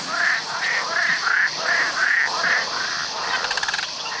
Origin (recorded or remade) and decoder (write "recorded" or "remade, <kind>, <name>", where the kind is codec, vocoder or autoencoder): recorded